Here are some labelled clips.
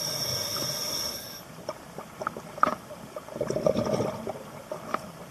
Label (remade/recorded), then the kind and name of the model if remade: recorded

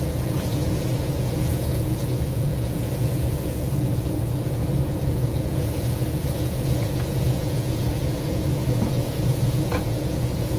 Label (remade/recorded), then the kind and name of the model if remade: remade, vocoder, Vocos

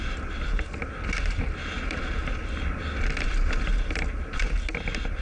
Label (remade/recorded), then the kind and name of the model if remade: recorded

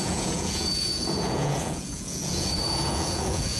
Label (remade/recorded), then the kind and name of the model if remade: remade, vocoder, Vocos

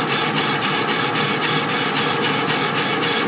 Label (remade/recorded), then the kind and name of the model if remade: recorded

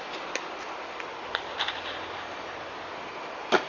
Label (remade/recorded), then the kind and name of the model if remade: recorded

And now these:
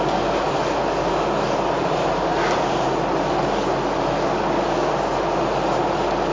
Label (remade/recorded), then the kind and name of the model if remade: recorded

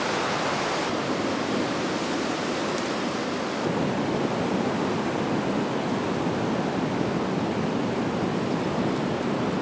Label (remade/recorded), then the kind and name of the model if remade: recorded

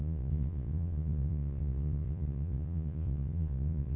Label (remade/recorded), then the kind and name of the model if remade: remade, vocoder, Vocos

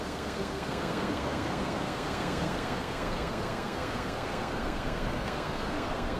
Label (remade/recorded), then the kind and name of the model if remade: remade, codec, SNAC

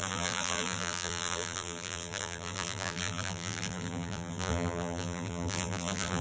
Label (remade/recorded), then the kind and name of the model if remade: remade, vocoder, BigVGAN v2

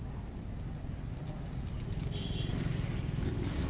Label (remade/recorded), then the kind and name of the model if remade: recorded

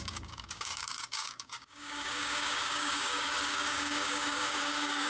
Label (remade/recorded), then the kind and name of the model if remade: remade, codec, DAC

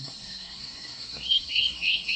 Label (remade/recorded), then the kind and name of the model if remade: remade, codec, SNAC